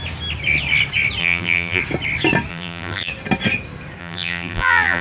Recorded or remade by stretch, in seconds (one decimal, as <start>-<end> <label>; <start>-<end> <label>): 0.0-1.2 recorded; 1.2-1.8 remade; 1.8-2.5 recorded; 2.5-3.1 remade; 3.1-4.0 recorded; 4.0-5.0 remade